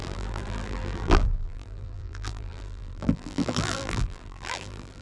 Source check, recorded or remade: remade